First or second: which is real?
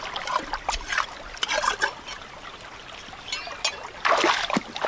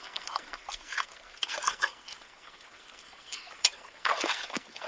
first